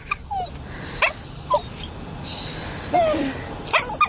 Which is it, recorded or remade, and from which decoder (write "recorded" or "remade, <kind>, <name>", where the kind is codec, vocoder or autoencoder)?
recorded